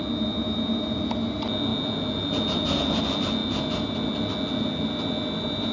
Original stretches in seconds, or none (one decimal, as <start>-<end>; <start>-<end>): 0.0-5.7